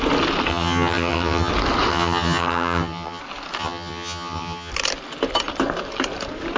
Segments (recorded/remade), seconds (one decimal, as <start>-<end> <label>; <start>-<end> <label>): 0.0-0.5 recorded; 0.5-1.5 remade; 1.5-1.9 recorded; 1.9-3.2 remade; 3.2-3.6 recorded; 3.6-4.7 remade; 4.7-6.6 recorded